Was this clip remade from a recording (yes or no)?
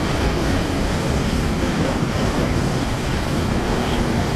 yes